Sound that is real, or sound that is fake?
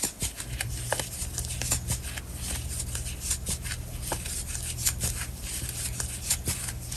real